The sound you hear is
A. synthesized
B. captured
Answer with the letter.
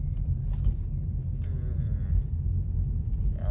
B